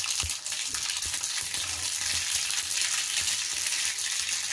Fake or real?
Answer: real